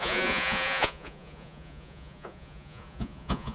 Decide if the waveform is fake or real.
fake